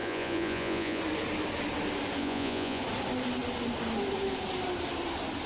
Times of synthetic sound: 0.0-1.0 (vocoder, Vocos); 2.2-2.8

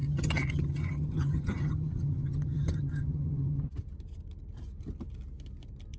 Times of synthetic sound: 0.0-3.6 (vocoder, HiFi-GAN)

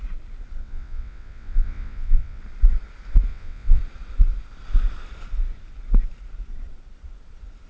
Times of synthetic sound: 0.6-2.4 (vocoder, WaveNeXt); 3.3-3.8

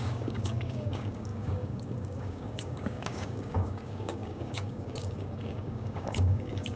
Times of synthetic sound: 0.0-6.8 (codec, DAC)